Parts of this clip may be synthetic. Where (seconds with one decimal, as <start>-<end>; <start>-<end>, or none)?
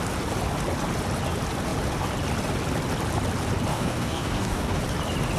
3.7-4.8